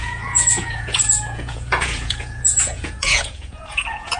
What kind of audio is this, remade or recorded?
remade